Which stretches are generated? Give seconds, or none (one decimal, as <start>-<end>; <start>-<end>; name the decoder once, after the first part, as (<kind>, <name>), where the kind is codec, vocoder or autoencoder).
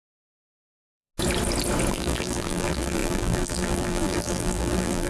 0.0-1.1 (vocoder, BigVGAN v2); 1.9-5.1